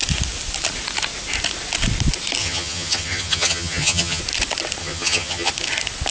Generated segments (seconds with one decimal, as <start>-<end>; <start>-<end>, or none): 2.4-4.2; 4.8-5.5